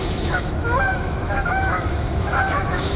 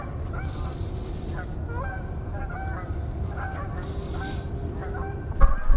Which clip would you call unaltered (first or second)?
second